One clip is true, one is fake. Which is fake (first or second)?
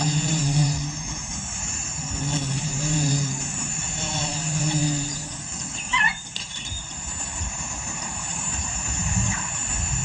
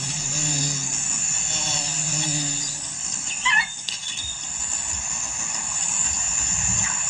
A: first